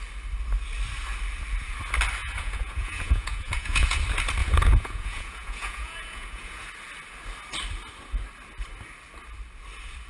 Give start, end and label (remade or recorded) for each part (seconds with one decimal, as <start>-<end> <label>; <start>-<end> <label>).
0.0-2.2 recorded; 2.2-4.0 remade; 4.0-4.4 recorded; 4.4-6.7 remade; 6.7-10.1 recorded